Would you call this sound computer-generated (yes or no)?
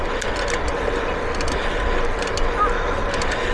no